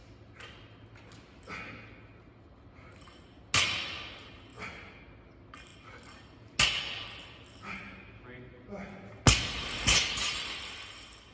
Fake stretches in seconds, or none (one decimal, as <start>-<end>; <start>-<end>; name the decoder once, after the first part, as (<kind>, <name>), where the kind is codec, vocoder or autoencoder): 4.5-5.0 (vocoder, BigVGAN v2)